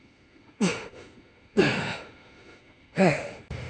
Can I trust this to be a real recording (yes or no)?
no